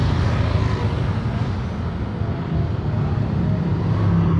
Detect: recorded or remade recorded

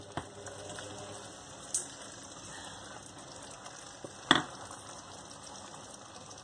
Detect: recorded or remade recorded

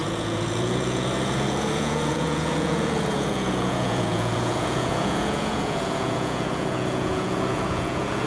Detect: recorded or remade remade